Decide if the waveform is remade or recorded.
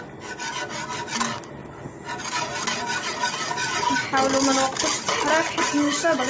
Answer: recorded